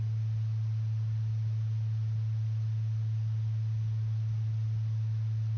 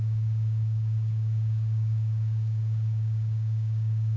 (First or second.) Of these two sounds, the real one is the first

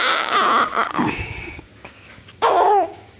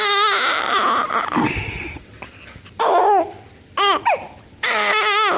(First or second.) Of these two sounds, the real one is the second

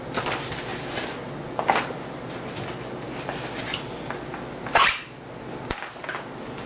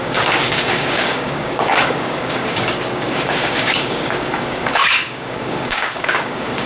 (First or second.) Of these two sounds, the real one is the first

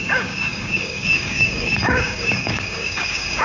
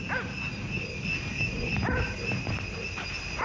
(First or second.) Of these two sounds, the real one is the second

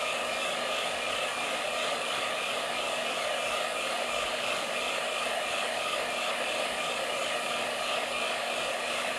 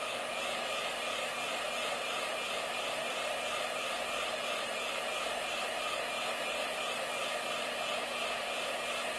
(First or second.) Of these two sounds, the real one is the second